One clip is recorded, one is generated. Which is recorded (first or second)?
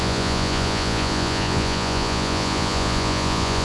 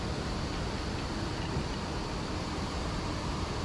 second